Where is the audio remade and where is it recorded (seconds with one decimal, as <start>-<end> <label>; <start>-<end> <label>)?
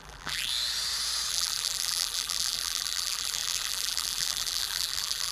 0.0-0.5 remade; 0.5-1.3 recorded; 1.3-5.3 remade